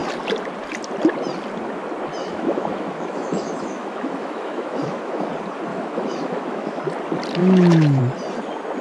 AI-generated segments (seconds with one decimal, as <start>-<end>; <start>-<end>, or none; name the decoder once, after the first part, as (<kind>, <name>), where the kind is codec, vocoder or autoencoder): 2.2-5.3 (autoencoder, DAC-VAE); 5.7-6.8; 7.4-8.0